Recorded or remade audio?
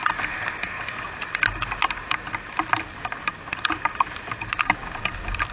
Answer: recorded